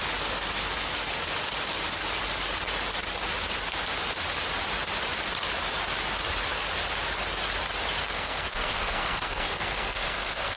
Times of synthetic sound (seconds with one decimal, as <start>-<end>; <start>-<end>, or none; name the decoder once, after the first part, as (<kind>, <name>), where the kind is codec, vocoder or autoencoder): 8.0-10.6 (codec, SNAC)